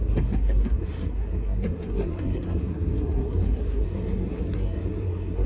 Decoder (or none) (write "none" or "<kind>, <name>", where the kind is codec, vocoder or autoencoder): codec, SNAC